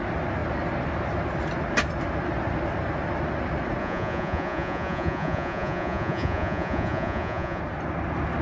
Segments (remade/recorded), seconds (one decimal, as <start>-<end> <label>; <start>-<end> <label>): 0.0-3.8 recorded; 3.8-7.6 remade; 7.6-8.4 recorded